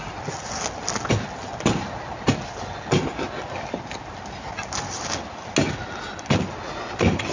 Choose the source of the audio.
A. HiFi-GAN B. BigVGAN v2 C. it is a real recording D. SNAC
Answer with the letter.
C